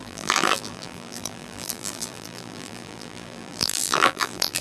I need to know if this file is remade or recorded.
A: remade